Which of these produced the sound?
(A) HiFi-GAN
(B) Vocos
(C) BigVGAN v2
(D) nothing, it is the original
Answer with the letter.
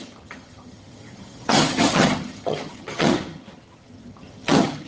A